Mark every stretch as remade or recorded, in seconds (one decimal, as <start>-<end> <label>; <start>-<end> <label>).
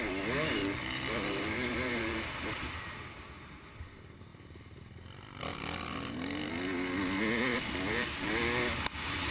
0.0-0.6 recorded; 0.6-2.7 remade; 2.7-7.5 recorded; 7.5-8.3 remade; 8.3-9.3 recorded